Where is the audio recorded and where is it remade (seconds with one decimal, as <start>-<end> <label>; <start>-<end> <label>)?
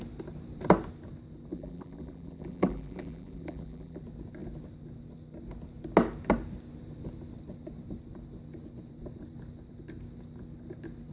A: 0.0-1.5 recorded; 1.5-4.0 remade; 4.0-11.1 recorded